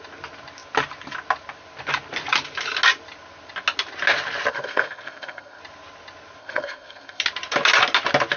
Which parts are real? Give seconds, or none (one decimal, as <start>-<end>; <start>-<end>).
0.0-4.5; 5.6-6.4; 7.2-8.4